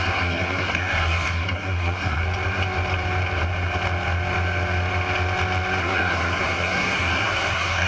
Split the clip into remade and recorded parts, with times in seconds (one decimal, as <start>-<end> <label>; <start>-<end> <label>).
0.0-2.2 remade; 2.2-5.8 recorded; 5.8-7.9 remade